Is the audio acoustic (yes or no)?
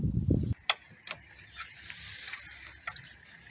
yes